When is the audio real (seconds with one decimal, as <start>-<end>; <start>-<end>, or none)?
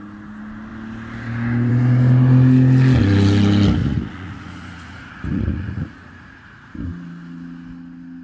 0.0-3.8; 6.7-8.2